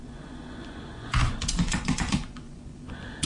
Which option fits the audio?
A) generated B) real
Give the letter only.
A